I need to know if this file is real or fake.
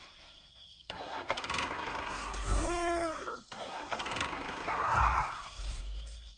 fake